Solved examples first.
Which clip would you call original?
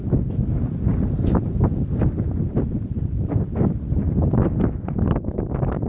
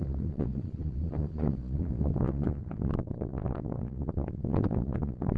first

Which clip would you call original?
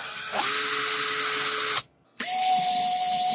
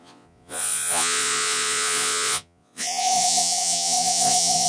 first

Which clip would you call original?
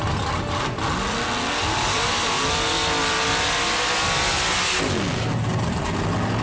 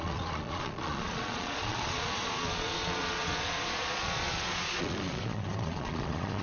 first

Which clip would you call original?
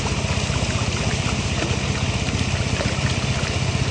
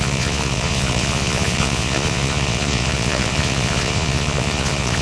first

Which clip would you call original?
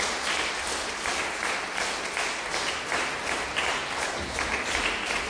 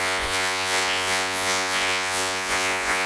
first